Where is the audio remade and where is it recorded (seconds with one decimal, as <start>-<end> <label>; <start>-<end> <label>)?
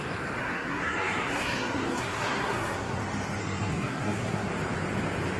0.0-0.4 recorded; 0.4-3.0 remade; 3.0-3.4 recorded; 3.4-4.5 remade; 4.5-5.4 recorded